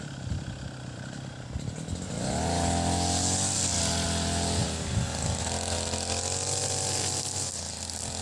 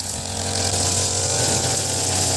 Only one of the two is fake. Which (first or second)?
second